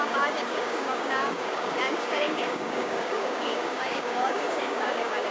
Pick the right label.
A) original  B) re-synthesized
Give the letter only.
B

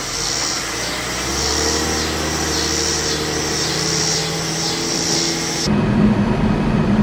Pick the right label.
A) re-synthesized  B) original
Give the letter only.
B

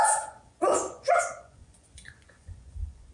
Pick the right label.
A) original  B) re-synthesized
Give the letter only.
B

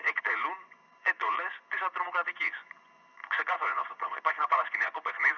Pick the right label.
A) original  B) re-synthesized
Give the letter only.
B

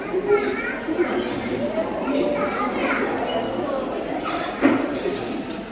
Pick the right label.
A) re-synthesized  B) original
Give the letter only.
A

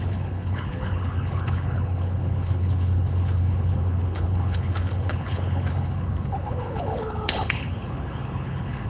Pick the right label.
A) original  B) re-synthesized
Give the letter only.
B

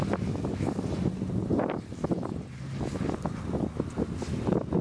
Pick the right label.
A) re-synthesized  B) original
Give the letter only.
B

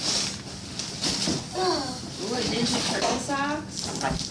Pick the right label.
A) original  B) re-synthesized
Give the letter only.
A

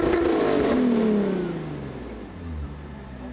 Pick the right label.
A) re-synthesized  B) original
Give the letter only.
B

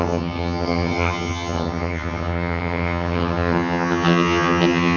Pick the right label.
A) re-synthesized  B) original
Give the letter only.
A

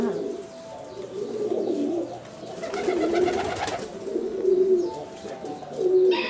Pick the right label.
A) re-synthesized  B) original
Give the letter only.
B